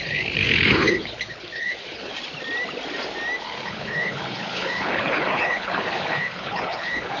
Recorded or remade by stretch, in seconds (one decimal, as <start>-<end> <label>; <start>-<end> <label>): 0.0-2.1 remade; 2.1-3.4 recorded; 3.4-7.2 remade